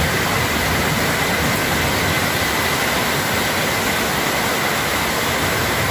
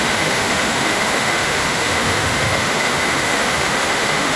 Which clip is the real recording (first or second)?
first